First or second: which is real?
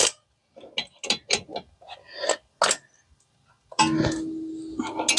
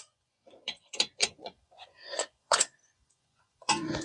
first